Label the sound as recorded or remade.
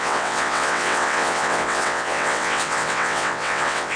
remade